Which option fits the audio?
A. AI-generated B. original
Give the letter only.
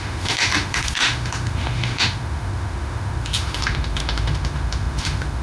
A